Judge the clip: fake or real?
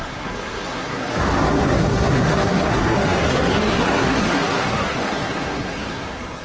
fake